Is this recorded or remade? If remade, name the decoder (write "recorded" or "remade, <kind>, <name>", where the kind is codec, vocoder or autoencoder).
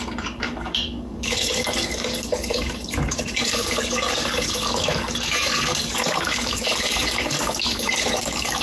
remade, codec, DAC